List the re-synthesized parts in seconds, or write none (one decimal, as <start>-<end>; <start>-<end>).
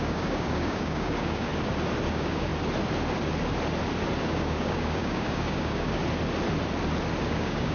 0.0-1.5; 2.1-2.5; 4.2-6.0; 7.2-7.7